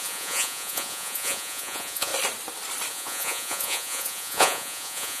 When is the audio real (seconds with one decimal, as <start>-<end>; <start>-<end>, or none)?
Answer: 2.1-2.9

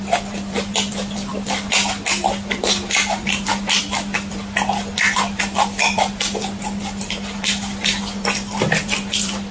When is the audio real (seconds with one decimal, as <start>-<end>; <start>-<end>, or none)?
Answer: 0.0-9.5

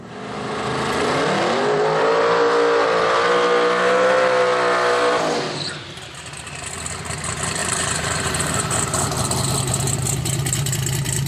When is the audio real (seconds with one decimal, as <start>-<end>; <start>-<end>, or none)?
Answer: 0.0-7.6; 9.1-11.3

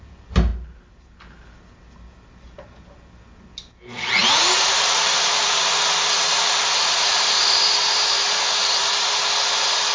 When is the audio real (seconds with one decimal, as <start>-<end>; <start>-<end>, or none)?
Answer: 0.0-0.5; 1.2-4.2; 9.1-9.9

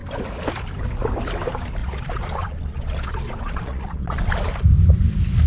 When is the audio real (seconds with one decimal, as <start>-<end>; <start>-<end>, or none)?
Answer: 0.0-1.8; 4.3-5.5

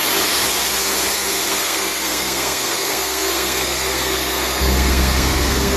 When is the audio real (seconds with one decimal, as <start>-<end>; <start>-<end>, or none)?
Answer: 0.0-1.5

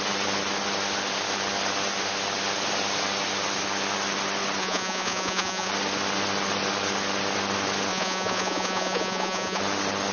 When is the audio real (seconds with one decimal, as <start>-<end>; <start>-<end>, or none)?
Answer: 0.0-4.6; 5.7-7.9; 9.6-10.1

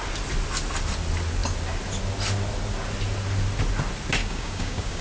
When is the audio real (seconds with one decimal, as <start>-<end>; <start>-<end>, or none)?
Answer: 0.0-4.2